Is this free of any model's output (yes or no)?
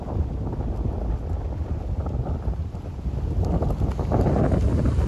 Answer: yes